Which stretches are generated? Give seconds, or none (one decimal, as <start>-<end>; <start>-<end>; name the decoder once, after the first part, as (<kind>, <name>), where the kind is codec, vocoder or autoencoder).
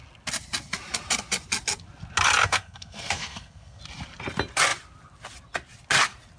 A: 2.4-3.8 (codec, SNAC)